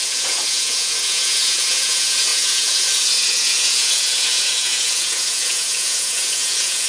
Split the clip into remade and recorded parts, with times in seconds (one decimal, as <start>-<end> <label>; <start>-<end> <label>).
0.0-6.9 remade